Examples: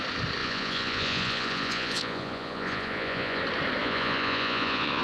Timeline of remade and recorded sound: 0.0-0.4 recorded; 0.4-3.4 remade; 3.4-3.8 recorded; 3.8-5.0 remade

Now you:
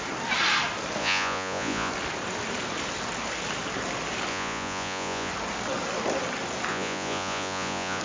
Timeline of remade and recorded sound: 0.0-1.0 recorded; 1.0-1.9 remade; 1.9-4.3 recorded; 4.3-5.3 remade; 5.3-6.7 recorded; 6.7-8.0 remade

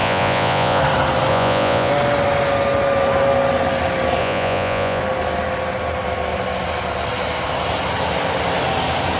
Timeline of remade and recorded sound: 0.0-0.8 remade; 0.8-1.3 recorded; 1.3-1.9 remade; 1.9-4.2 recorded; 4.2-5.0 remade; 5.0-9.2 recorded

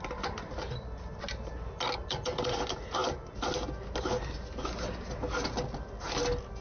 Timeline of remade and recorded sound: 0.0-6.6 recorded

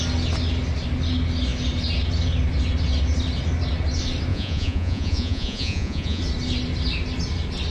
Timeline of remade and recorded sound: 0.0-4.3 recorded; 4.3-6.2 remade; 6.2-7.7 recorded